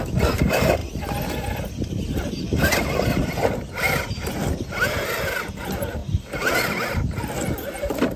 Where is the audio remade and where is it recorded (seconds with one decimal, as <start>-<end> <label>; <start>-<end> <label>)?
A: 0.0-8.2 recorded